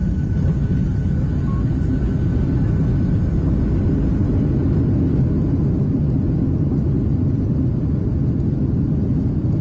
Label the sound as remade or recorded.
recorded